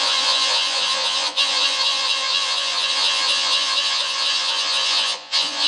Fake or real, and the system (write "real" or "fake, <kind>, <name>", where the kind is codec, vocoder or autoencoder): fake, vocoder, Vocos